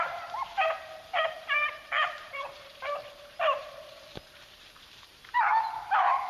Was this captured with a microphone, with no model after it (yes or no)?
no